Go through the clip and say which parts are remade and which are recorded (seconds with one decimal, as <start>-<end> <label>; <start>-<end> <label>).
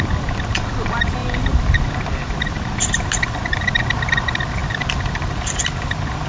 0.0-6.3 recorded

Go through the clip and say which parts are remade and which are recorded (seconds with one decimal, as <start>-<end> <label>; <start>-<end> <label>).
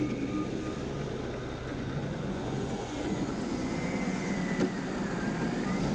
0.0-1.7 recorded; 1.7-4.4 remade; 4.4-5.9 recorded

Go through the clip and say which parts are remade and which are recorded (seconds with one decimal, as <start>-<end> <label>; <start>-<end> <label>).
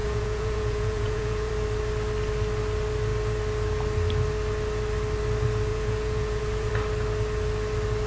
0.0-1.5 remade; 1.5-5.7 recorded; 5.7-6.7 remade; 6.7-8.1 recorded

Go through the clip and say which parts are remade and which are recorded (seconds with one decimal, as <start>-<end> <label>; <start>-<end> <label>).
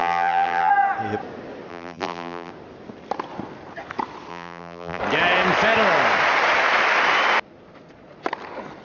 0.0-0.7 remade; 0.7-1.7 recorded; 1.7-2.5 remade; 2.5-4.3 recorded; 4.3-5.0 remade; 5.0-8.8 recorded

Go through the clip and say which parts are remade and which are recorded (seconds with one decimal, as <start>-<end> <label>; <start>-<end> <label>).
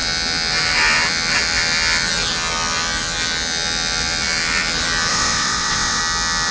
0.0-5.1 recorded; 5.1-6.0 remade; 6.0-6.5 recorded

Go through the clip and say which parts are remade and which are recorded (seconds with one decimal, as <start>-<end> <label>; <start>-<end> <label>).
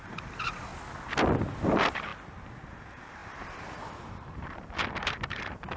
0.0-0.7 remade; 0.7-1.5 recorded; 1.5-2.1 remade; 2.1-2.7 recorded; 2.7-5.8 remade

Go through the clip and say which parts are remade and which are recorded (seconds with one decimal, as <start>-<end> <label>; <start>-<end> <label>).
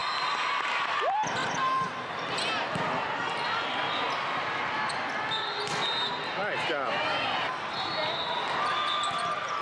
0.0-9.6 recorded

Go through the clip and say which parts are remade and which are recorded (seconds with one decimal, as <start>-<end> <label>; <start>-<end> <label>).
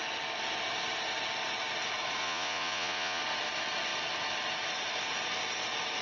0.0-2.2 recorded; 2.2-3.2 remade; 3.2-6.0 recorded